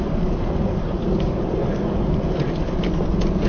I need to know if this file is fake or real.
real